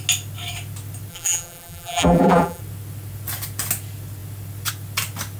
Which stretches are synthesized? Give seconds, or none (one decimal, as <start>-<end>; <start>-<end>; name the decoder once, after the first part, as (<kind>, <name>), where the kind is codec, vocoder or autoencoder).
1.1-2.6 (vocoder, BigVGAN v2)